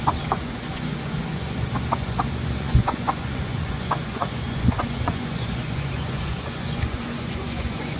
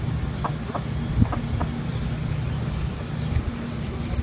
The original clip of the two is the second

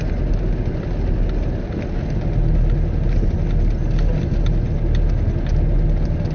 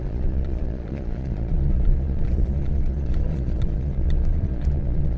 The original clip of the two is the first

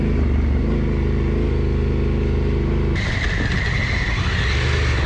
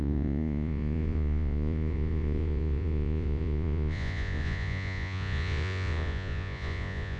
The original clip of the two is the first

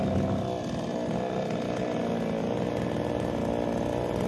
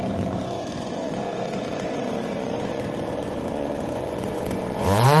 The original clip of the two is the first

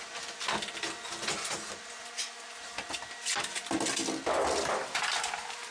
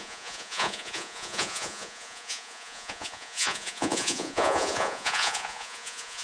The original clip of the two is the first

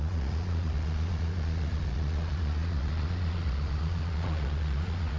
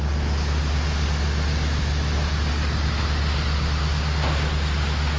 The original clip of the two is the second